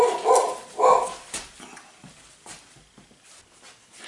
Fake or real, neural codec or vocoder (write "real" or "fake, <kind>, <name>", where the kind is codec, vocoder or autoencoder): real